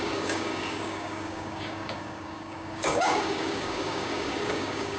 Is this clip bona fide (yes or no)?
no